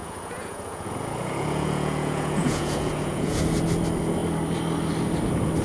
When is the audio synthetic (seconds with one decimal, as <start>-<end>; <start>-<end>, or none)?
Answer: 0.0-3.4